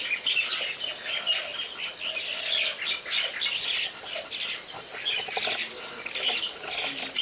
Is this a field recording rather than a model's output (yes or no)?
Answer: yes